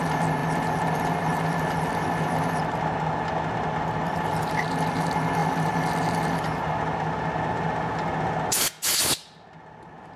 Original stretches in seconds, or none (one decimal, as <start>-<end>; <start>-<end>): 0.0-10.2